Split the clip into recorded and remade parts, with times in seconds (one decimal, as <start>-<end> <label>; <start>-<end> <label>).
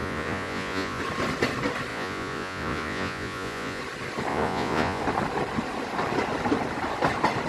0.0-1.0 remade; 1.0-1.9 recorded; 1.9-3.8 remade; 3.8-4.3 recorded; 4.3-5.0 remade; 5.0-7.5 recorded